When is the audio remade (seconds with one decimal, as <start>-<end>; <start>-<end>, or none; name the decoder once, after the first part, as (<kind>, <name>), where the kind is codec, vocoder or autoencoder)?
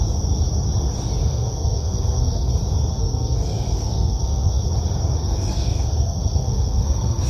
1.2-2.5 (codec, SNAC); 2.9-4.6; 5.2-7.3